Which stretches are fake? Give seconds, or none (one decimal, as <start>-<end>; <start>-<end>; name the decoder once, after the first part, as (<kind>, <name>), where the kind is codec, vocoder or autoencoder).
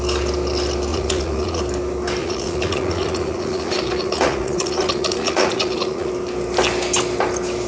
0.9-1.6 (vocoder, Vocos); 2.2-6.1